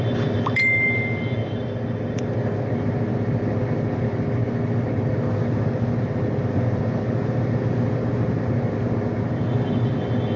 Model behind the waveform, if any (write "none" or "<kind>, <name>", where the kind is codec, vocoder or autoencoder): none